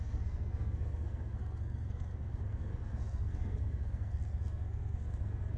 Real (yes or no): no